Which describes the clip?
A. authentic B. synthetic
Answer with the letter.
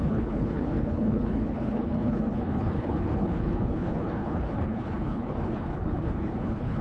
B